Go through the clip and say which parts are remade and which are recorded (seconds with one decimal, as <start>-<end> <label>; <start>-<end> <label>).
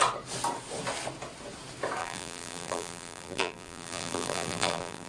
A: 0.0-2.0 recorded; 2.0-5.1 remade